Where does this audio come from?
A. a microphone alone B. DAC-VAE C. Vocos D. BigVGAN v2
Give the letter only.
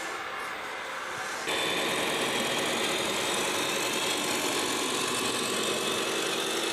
A